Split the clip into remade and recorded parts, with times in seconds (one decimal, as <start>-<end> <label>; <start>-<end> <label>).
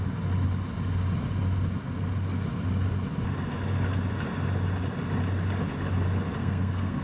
0.0-6.4 recorded; 6.4-7.0 remade